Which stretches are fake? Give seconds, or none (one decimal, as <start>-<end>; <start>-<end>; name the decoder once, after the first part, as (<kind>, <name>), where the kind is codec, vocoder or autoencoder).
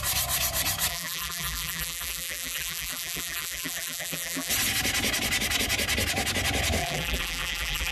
0.9-4.5 (vocoder, BigVGAN v2); 6.8-7.9